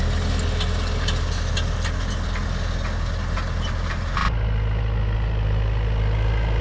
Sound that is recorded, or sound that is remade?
recorded